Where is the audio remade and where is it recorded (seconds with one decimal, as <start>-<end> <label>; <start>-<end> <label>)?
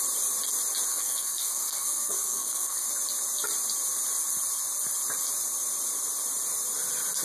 0.0-0.9 recorded; 0.9-2.9 remade; 2.9-7.2 recorded